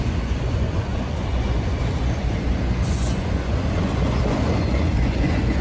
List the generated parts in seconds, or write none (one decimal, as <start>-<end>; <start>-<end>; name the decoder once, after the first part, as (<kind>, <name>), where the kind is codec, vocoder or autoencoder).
0.0-5.6 (vocoder, Vocos)